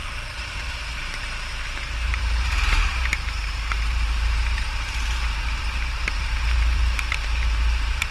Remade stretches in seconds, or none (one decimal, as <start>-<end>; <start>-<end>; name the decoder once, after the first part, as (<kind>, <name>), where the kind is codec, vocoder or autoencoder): 0.0-8.1 (vocoder, BigVGAN v2)